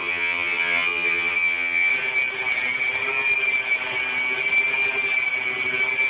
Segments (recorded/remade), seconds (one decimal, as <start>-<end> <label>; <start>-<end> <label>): 0.0-1.9 remade; 1.9-6.1 recorded